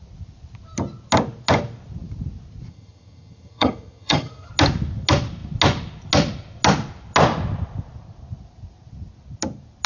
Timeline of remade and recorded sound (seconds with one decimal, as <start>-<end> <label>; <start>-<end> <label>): 0.0-2.7 recorded; 2.7-4.5 remade; 4.5-9.9 recorded